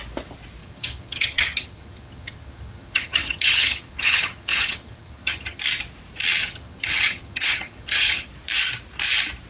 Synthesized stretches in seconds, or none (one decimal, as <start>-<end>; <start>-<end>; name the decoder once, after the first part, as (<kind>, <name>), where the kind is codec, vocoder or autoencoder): 0.6-5.6 (vocoder, HiFi-GAN); 6.4-8.3